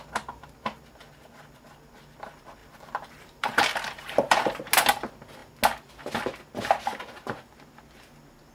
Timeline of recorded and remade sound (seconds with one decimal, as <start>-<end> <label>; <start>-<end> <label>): 0.0-2.6 recorded; 2.6-4.6 remade; 4.6-8.5 recorded